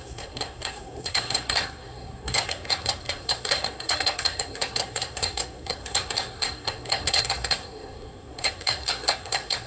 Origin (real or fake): fake